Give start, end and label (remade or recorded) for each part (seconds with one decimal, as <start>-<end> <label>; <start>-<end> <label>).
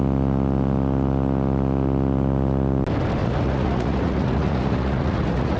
0.0-3.2 recorded; 3.2-5.6 remade